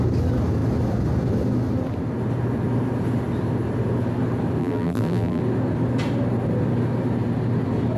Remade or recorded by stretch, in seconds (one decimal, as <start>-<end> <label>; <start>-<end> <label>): 0.0-4.6 recorded; 4.6-5.4 remade; 5.4-8.0 recorded